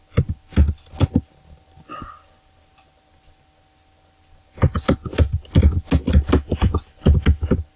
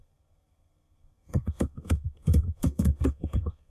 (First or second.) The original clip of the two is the first